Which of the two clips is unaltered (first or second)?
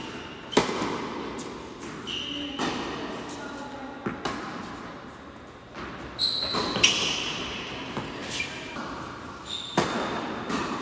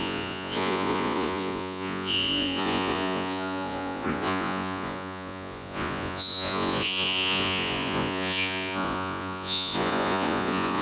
first